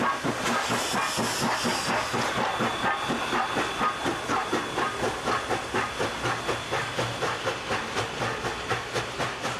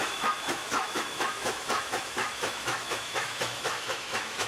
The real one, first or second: first